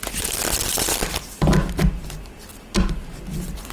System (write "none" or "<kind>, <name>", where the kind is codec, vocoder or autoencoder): none